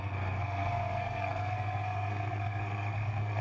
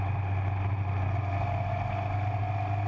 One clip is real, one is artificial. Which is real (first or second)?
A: second